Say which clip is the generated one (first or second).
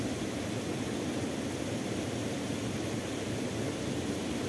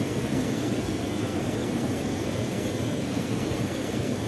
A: second